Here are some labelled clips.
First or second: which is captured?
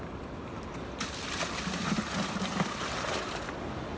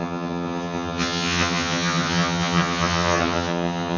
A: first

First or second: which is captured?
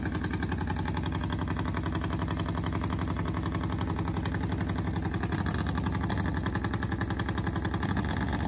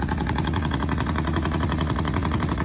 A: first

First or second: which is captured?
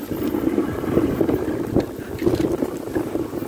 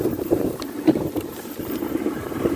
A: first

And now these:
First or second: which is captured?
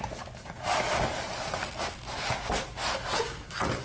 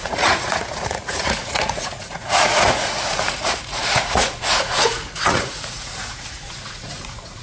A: first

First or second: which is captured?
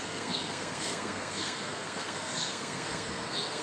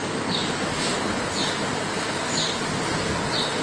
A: second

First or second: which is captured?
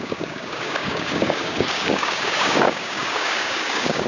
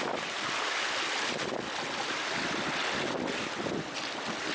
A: second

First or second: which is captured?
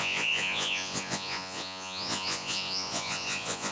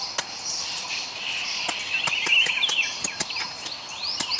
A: second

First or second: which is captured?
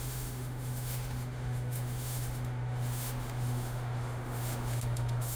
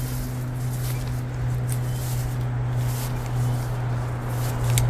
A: second